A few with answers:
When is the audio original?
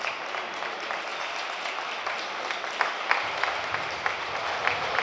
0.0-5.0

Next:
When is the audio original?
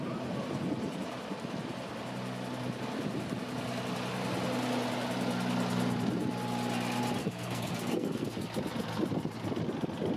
0.0-7.2; 8.4-10.2